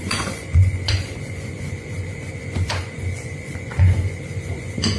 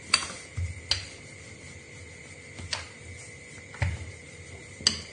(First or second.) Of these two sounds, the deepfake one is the first